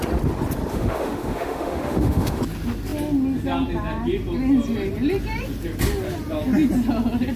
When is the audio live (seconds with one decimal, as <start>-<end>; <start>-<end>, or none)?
0.0-0.7; 2.4-7.4